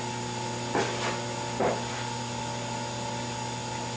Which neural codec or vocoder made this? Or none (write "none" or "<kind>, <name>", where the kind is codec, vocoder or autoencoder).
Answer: none